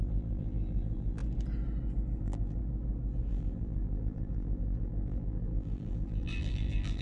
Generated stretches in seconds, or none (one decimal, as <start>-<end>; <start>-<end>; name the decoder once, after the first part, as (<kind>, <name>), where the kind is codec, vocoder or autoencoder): 0.0-1.2 (vocoder, BigVGAN v2); 2.2-2.6; 3.3-7.0